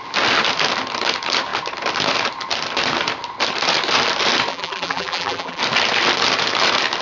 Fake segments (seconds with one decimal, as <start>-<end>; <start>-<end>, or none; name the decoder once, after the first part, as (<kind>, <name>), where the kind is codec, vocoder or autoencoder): 4.5-5.6 (vocoder, BigVGAN v2)